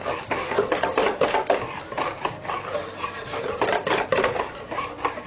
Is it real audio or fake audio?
real